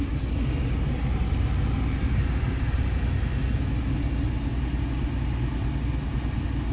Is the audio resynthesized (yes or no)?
no